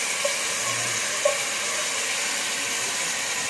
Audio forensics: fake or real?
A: real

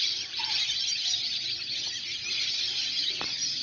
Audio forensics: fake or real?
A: real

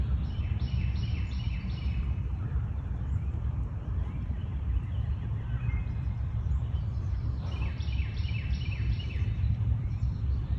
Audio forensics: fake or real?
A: fake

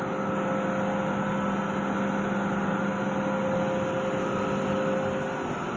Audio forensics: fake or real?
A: real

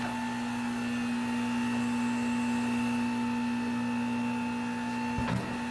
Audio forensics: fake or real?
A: real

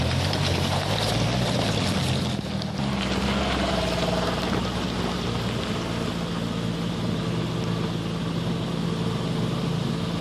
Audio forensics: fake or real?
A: real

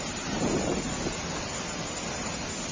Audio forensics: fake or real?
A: real